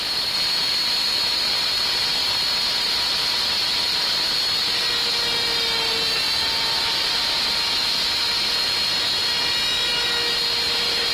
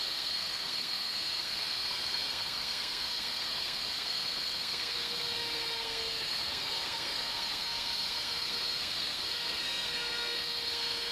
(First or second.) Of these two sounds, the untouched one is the first